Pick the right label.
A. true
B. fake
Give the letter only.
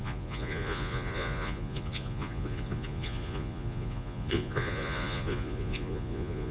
B